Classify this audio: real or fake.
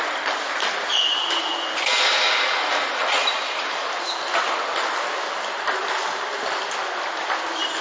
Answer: real